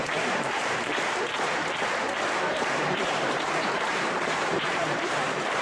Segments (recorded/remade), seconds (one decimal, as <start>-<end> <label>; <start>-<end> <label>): 0.0-0.9 remade; 0.9-2.5 recorded; 2.5-5.6 remade